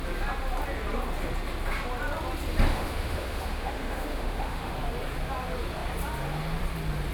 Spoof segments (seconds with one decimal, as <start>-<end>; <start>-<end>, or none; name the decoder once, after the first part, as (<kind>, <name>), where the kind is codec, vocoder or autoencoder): 2.7-4.7 (autoencoder, DAC-VAE)